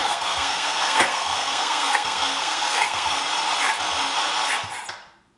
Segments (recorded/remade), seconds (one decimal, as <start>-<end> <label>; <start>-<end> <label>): 0.0-3.2 remade; 3.2-5.4 recorded